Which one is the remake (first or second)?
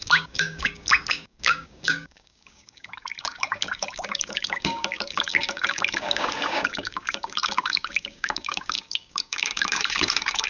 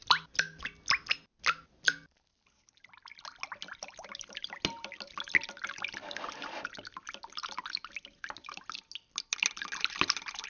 first